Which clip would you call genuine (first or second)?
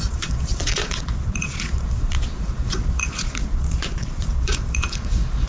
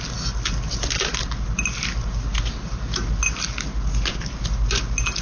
second